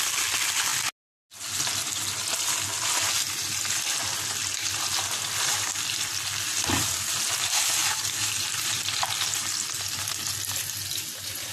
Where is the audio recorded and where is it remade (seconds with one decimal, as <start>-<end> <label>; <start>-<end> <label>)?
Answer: 0.0-7.8 recorded; 7.8-9.0 remade; 9.0-11.5 recorded